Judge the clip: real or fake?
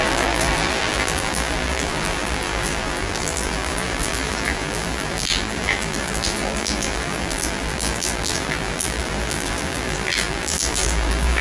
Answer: fake